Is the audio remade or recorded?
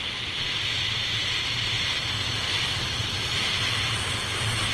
recorded